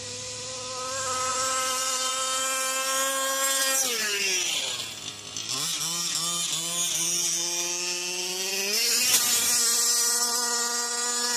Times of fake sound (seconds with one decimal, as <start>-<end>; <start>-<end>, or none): 1.3-2.1